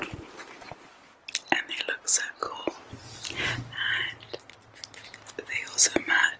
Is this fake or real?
real